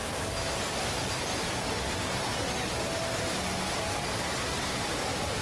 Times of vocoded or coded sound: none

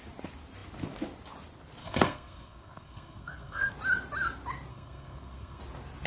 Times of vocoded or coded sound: 1.8-3.7 (codec, SNAC); 4.7-5.6

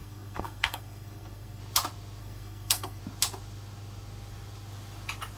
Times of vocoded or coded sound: 0.0-1.6 (codec, SNAC); 2.2-3.0

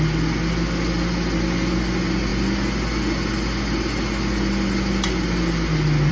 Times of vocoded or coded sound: none

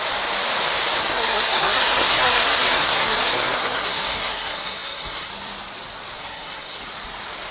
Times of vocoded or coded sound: 1.0-5.3 (codec, SNAC); 6.2-6.8

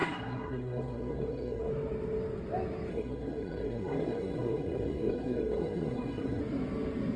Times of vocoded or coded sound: 0.0-1.7 (codec, SNAC); 2.9-6.4

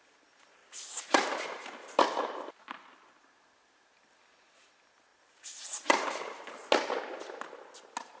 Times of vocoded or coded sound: none